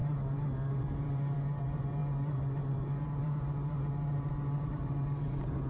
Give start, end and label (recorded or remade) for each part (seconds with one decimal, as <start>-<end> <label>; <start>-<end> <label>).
0.0-5.7 remade